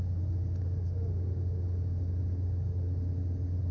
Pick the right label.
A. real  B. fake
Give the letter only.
A